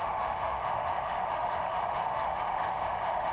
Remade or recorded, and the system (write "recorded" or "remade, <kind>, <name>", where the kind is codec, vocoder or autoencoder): remade, autoencoder, DAC-VAE